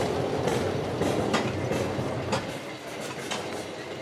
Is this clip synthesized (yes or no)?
no